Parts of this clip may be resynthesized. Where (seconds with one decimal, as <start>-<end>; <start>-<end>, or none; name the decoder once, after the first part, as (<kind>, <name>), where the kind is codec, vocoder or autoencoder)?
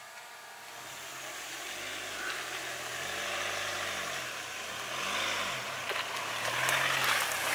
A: none